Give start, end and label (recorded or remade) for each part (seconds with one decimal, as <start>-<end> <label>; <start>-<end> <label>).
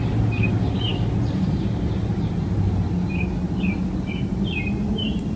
0.0-5.4 recorded